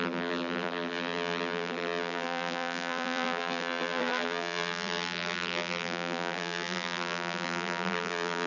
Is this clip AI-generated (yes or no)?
yes